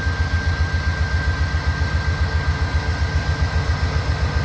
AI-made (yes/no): no